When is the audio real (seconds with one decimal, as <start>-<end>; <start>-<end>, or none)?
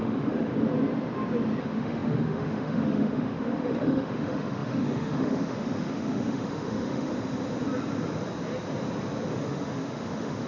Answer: 0.5-1.6; 7.1-9.3